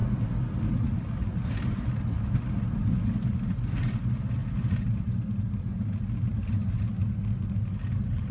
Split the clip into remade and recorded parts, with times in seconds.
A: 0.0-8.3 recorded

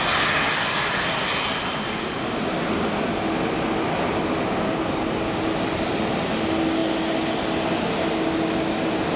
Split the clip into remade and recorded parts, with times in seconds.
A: 0.0-9.2 recorded

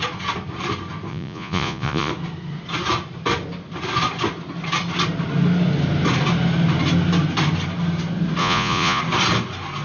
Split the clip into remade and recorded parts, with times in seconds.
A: 0.0-1.1 recorded; 1.1-2.1 remade; 2.1-8.4 recorded; 8.4-9.0 remade; 9.0-9.8 recorded

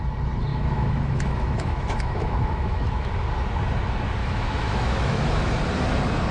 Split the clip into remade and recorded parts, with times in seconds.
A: 0.0-0.5 recorded; 0.5-3.1 remade; 3.1-4.2 recorded; 4.2-5.5 remade; 5.5-6.3 recorded

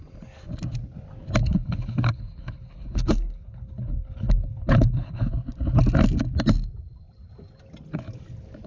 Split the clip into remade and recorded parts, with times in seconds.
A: 0.0-1.4 recorded; 1.4-5.3 remade; 5.3-8.7 recorded